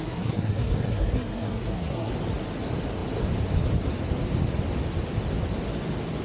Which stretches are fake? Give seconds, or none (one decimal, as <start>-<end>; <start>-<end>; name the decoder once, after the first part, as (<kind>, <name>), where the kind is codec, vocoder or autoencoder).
0.0-2.1 (codec, SNAC)

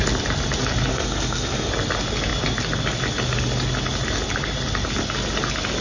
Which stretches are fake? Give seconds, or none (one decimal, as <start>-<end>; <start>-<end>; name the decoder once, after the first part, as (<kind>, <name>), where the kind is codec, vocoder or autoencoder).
0.9-1.7 (codec, SNAC)

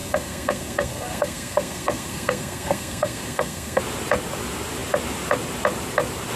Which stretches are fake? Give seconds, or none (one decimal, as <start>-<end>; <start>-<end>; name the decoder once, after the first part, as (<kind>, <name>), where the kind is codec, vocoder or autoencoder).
0.0-3.8 (codec, SNAC)

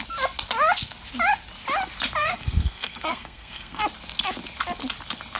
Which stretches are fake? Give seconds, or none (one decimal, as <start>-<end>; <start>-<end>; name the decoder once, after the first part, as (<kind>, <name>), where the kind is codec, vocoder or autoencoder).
2.2-3.8 (codec, SNAC)

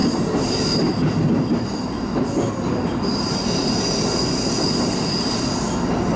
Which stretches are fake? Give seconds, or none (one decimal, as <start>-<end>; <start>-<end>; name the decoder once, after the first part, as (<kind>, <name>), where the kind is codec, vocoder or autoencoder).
none

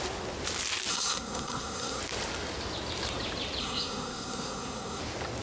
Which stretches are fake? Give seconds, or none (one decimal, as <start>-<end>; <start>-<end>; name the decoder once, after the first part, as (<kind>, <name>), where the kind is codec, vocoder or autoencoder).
0.9-2.0 (codec, SNAC); 3.6-5.0

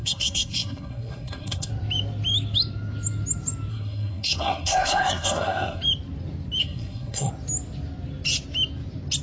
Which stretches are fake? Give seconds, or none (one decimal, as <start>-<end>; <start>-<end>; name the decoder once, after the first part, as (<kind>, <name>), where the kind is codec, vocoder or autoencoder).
0.0-1.7 (codec, SNAC); 3.7-5.8; 6.6-7.3

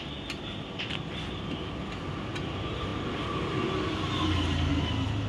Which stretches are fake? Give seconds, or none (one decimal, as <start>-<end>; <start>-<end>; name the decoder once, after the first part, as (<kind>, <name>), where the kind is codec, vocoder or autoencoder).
none